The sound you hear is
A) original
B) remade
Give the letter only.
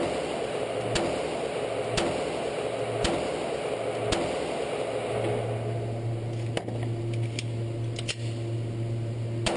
A